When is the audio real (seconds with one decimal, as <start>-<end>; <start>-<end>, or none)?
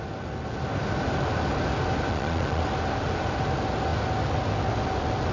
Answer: 0.0-2.1; 2.6-5.3